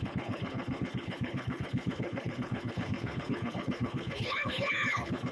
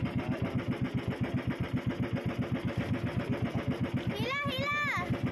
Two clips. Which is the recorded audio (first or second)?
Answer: second